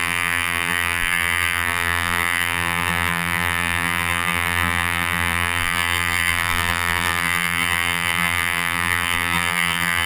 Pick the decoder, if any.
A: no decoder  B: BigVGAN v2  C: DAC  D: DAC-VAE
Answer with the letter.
B